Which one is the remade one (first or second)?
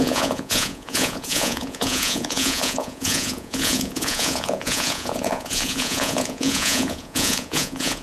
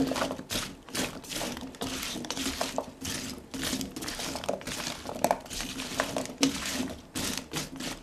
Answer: first